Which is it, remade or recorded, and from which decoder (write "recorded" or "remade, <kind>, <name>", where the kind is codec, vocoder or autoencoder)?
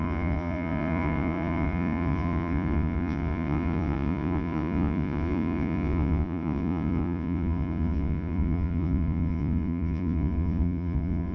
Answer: remade, vocoder, Vocos